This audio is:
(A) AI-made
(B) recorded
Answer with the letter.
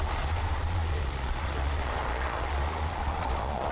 A